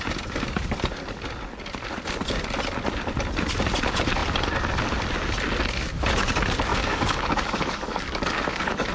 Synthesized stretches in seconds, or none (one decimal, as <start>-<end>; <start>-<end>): 6.7-8.9